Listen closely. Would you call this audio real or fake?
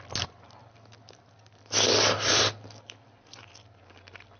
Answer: real